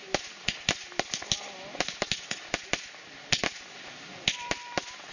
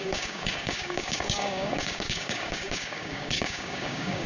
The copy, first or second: second